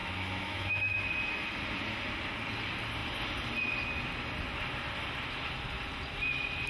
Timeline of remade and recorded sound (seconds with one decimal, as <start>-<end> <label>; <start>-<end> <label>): 0.0-1.1 remade; 1.1-6.7 recorded